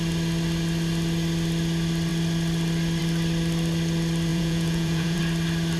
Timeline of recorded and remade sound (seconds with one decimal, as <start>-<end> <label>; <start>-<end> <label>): 0.0-4.3 recorded; 4.3-5.2 remade; 5.2-5.8 recorded